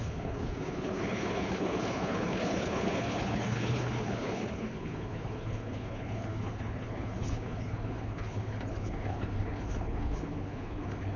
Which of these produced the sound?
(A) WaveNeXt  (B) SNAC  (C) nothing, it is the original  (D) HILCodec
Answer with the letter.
D